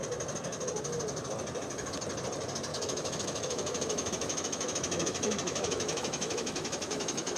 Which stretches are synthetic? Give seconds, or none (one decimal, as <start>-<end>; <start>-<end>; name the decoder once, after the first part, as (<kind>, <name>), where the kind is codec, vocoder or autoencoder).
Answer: 2.7-7.4 (autoencoder, DAC-VAE)